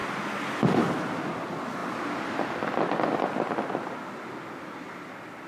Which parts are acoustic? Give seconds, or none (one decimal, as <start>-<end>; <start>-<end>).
0.0-5.5